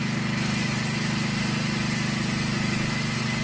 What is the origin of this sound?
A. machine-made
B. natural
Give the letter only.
B